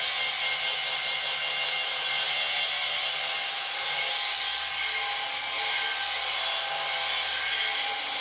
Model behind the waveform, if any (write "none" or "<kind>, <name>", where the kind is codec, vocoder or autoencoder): none